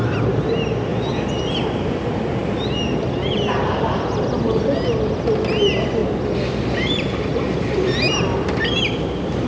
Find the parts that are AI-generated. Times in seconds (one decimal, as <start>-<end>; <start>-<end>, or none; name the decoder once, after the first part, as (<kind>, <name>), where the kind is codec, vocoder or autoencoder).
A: 0.0-0.9 (vocoder, BigVGAN v2); 1.5-6.0; 6.6-9.5